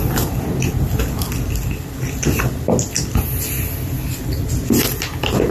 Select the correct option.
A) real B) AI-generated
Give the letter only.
A